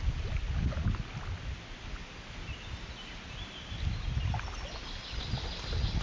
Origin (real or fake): real